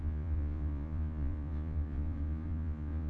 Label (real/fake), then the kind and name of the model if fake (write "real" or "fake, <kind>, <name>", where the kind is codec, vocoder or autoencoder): fake, vocoder, Vocos